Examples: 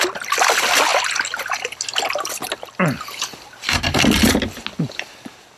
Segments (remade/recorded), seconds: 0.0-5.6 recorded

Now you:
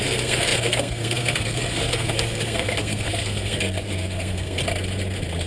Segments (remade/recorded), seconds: 0.0-4.6 remade; 4.6-5.5 recorded

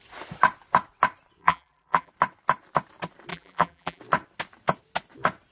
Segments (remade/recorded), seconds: 0.0-1.4 recorded; 1.4-2.1 remade; 2.1-3.3 recorded; 3.3-4.0 remade; 4.0-5.5 recorded